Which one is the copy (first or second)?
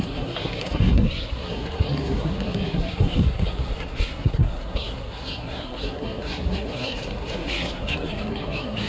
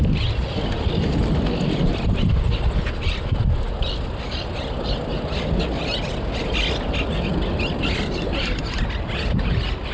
first